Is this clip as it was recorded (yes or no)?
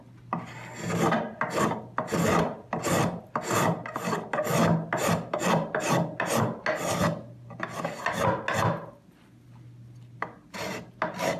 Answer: yes